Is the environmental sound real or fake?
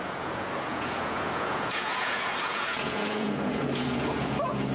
fake